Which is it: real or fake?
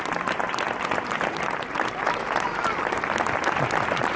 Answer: real